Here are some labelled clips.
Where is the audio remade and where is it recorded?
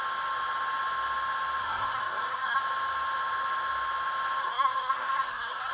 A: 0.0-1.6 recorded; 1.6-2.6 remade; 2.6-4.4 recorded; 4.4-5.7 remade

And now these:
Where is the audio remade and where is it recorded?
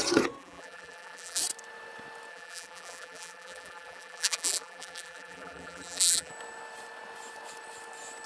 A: 0.0-0.4 recorded; 0.4-1.4 remade; 1.4-2.3 recorded; 2.3-6.3 remade; 6.3-8.3 recorded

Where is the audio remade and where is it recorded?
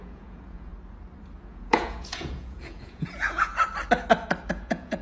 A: 0.0-0.7 remade; 0.7-1.4 recorded; 1.4-3.5 remade; 3.5-4.5 recorded; 4.5-5.0 remade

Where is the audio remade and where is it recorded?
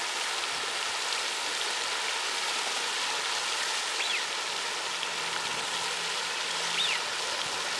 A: 0.0-7.8 recorded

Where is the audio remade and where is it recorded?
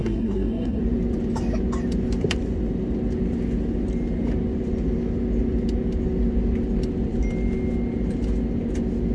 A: 0.0-0.8 remade; 0.8-9.1 recorded